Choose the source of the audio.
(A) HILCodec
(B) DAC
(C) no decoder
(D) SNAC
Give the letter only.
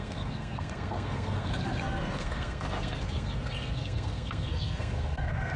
D